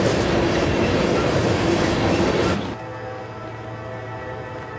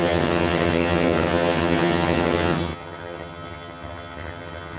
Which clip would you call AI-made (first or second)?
second